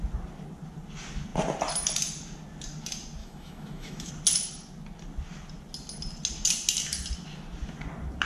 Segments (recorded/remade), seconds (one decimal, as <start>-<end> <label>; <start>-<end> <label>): 0.0-3.2 recorded; 3.2-4.1 remade; 4.1-8.3 recorded